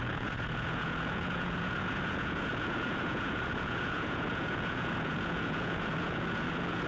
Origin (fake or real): fake